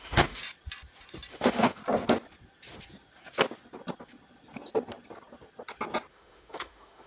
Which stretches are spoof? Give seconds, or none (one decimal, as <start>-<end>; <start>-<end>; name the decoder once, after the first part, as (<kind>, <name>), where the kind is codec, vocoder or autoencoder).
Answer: 0.0-0.4 (autoencoder, DAC-VAE); 1.3-1.8; 6.1-7.1

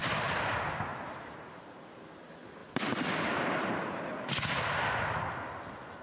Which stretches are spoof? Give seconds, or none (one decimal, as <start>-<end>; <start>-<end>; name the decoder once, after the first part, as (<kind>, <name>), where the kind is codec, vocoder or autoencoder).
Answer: 0.9-1.7 (vocoder, BigVGAN v2); 2.6-4.6

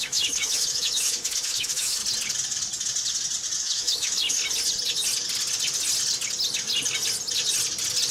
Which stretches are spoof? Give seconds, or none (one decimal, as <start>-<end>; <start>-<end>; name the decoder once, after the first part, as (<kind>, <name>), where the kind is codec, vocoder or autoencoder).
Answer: 0.0-2.0 (autoencoder, DAC-VAE); 3.6-4.4